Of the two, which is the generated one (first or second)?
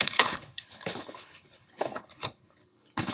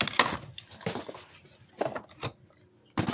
first